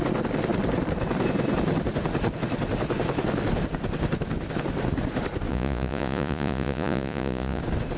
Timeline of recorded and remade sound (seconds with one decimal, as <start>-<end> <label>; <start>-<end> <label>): 0.0-5.5 recorded; 5.5-7.6 remade; 7.6-8.0 recorded